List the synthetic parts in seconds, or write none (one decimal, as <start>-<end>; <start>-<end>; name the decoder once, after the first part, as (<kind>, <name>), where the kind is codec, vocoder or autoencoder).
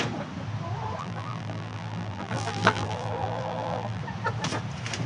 1.0-4.0 (vocoder, BigVGAN v2)